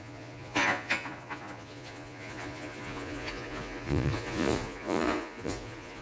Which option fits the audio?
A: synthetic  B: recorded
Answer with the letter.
A